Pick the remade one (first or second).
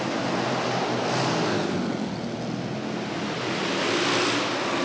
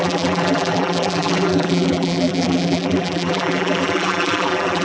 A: second